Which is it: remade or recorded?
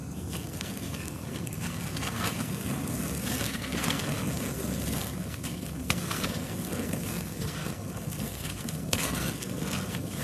remade